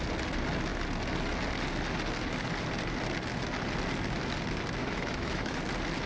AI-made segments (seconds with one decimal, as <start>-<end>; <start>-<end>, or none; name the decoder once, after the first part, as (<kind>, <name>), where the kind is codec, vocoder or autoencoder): 4.8-5.6 (autoencoder, DAC-VAE)